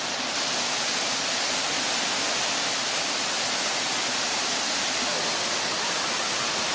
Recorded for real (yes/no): yes